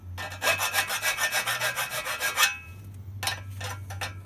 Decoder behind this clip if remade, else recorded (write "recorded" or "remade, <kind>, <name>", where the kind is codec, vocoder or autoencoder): recorded